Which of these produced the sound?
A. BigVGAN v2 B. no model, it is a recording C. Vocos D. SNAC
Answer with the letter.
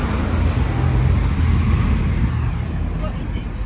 B